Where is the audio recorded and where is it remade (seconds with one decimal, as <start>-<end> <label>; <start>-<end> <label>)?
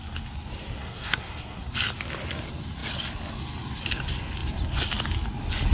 0.0-0.8 recorded; 0.8-1.7 remade; 1.7-5.7 recorded